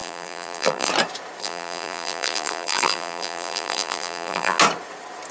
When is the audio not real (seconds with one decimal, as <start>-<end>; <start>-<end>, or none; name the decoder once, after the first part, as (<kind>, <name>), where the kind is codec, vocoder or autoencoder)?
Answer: 0.0-0.9 (vocoder, BigVGAN v2); 1.4-4.6